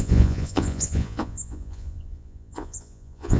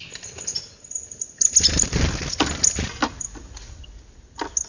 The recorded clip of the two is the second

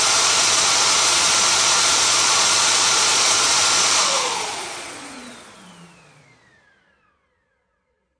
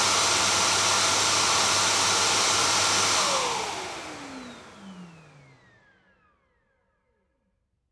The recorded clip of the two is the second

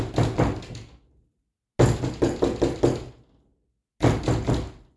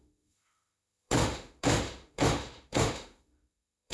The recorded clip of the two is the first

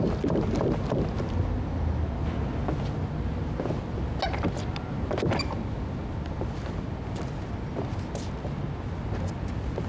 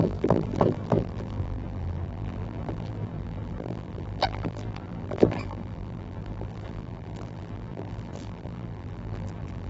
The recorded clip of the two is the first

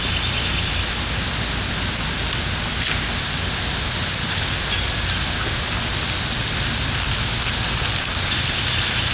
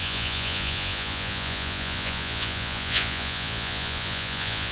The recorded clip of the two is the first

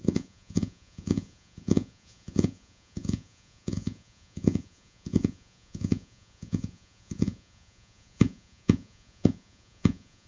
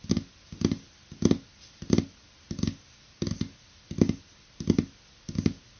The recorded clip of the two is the second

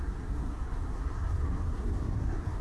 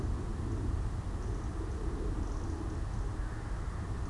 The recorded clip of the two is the second